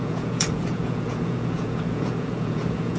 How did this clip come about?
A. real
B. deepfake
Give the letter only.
B